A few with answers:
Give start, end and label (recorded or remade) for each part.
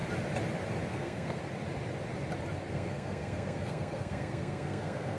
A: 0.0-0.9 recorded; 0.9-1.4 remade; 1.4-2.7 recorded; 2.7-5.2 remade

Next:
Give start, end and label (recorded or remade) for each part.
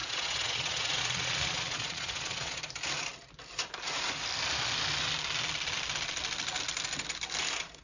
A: 0.0-2.6 remade; 2.6-7.8 recorded